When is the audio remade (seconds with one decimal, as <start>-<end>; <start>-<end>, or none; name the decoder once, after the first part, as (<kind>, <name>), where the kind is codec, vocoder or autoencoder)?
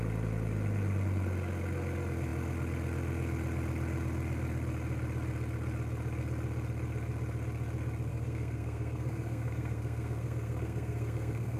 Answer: 8.1-11.6 (codec, SNAC)